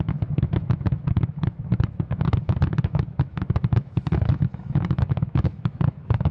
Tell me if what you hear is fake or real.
fake